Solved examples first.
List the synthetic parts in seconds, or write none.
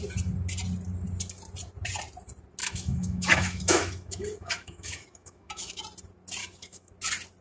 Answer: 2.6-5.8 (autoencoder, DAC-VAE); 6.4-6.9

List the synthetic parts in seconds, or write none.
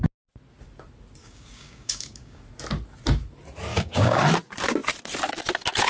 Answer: 1.2-2.4 (codec, DAC); 3.7-4.2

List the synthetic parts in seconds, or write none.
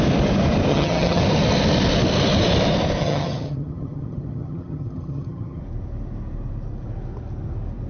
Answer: 0.7-1.2 (vocoder, HiFi-GAN); 3.0-5.6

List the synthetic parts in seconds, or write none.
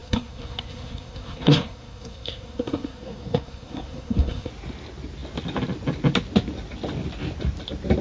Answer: 0.0-4.5 (codec, SNAC)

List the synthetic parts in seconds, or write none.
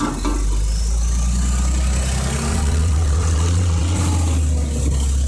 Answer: 2.5-4.0 (vocoder, WaveNeXt)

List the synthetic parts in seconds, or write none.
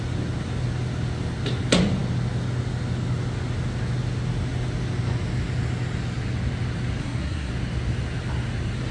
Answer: 7.0-7.5 (codec, SNAC)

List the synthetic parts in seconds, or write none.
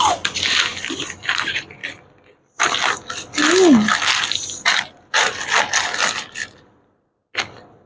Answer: none